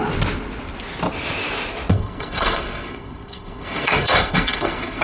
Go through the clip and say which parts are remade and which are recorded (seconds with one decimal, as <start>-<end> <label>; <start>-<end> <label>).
0.0-1.9 recorded; 1.9-5.0 remade